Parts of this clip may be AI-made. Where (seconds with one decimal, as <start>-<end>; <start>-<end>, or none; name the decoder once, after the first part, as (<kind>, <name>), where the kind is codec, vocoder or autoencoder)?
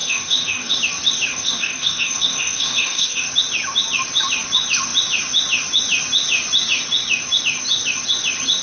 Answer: 0.0-0.8 (codec, DAC); 1.3-3.3